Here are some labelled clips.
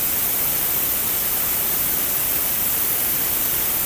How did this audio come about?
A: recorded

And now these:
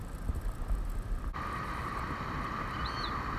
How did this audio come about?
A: recorded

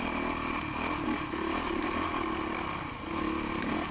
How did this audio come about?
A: recorded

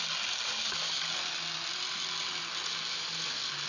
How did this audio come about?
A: recorded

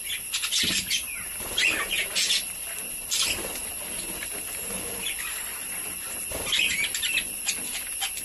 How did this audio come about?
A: recorded